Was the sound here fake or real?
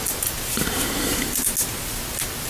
real